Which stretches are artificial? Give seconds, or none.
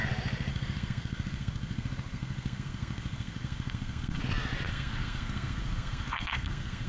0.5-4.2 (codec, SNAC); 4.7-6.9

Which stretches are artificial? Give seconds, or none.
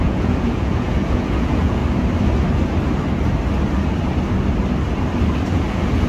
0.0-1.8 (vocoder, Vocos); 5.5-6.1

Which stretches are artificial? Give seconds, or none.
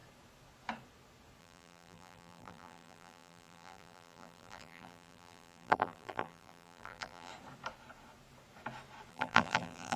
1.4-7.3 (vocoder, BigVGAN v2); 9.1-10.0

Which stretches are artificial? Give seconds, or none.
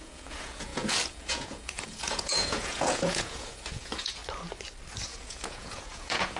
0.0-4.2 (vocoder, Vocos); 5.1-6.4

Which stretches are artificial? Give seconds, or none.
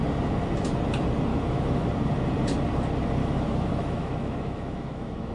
1.3-1.9 (autoencoder, DAC-VAE); 3.2-5.3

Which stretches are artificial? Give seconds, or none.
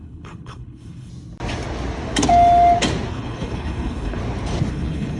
0.0-1.1 (codec, HILCodec); 3.1-4.2; 4.7-5.2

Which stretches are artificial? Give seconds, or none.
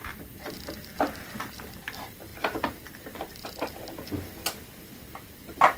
0.0-2.3 (vocoder, BigVGAN v2)